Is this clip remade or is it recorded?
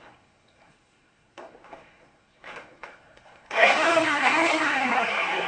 remade